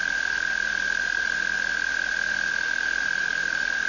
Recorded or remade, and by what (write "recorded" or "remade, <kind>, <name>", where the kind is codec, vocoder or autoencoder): remade, vocoder, BigVGAN v2